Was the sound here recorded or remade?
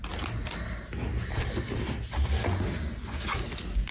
recorded